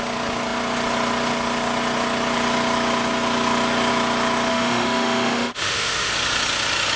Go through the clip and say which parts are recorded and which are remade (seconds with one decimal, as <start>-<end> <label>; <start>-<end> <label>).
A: 0.0-4.5 recorded; 4.5-6.1 remade; 6.1-7.0 recorded